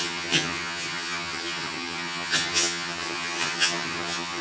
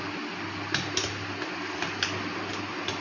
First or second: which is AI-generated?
first